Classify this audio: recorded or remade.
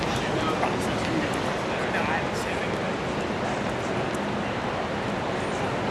recorded